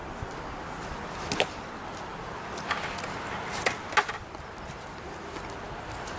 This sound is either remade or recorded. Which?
recorded